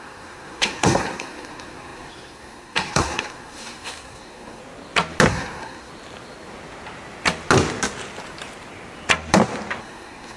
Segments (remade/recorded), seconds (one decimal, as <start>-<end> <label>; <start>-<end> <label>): 0.0-4.6 remade; 4.6-5.3 recorded; 5.3-5.9 remade; 5.9-9.8 recorded; 9.8-10.4 remade